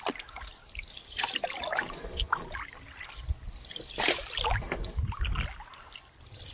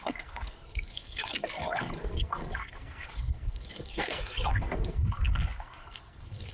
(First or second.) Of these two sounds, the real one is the first